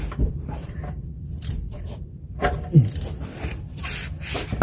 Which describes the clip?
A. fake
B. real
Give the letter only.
A